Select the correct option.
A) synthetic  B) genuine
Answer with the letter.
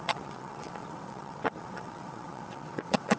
A